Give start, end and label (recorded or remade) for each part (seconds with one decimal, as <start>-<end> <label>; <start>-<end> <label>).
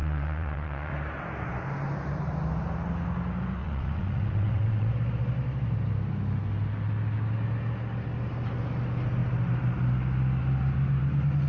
0.0-0.9 remade; 0.9-3.6 recorded; 3.6-4.9 remade; 4.9-11.5 recorded